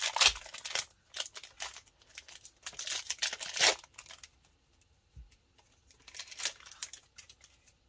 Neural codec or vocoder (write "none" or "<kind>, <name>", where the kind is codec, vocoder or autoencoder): none